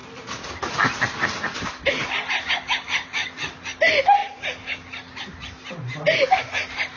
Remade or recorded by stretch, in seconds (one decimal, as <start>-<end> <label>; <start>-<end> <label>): 0.0-7.0 recorded